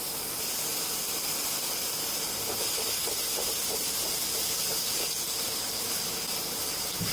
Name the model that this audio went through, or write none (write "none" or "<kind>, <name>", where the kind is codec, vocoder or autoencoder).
none